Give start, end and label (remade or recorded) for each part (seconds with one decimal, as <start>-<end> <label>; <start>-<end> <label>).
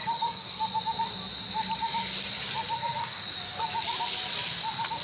0.0-0.6 remade; 0.6-2.9 recorded; 2.9-3.9 remade; 3.9-5.0 recorded